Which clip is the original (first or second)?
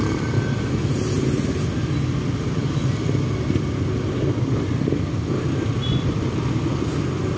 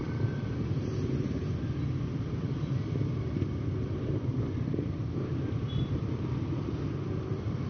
first